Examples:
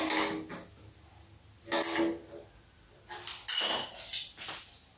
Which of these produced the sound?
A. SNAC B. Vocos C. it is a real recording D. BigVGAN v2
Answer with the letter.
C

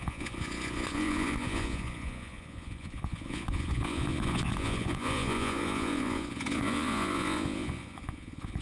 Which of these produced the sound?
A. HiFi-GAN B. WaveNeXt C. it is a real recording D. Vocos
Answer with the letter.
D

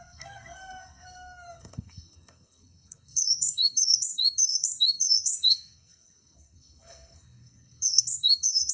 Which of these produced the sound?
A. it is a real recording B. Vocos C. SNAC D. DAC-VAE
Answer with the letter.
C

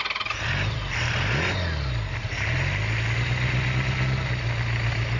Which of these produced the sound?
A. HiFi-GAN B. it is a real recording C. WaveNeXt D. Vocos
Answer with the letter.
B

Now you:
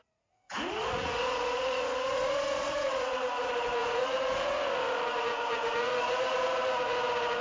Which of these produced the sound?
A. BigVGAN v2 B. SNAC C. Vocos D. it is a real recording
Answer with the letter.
C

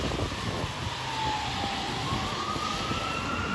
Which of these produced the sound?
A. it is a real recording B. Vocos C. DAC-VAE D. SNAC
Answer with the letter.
A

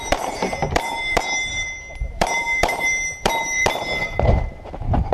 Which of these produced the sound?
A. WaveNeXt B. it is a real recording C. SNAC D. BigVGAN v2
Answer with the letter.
D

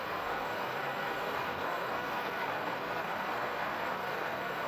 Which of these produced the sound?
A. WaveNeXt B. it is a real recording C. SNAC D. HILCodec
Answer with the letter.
C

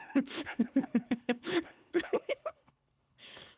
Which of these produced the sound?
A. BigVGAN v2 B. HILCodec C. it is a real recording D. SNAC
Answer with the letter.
B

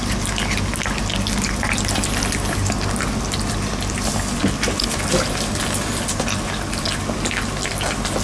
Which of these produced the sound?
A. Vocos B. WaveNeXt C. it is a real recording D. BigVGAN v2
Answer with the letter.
C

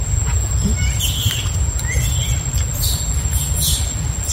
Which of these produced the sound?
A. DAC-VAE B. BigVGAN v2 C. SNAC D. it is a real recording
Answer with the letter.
D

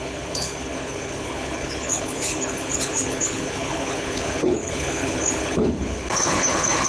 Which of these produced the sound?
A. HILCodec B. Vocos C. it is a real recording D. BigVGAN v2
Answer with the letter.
A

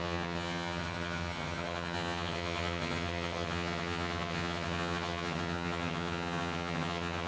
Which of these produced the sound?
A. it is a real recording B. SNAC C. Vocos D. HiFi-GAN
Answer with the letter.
D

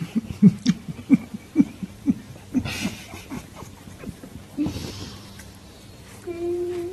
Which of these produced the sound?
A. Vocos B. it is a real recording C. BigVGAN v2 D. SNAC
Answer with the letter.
C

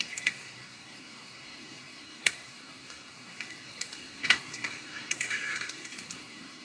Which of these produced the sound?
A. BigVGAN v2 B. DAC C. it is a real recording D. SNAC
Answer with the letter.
D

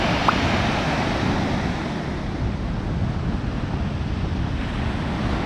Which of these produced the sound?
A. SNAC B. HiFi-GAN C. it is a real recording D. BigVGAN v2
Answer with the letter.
C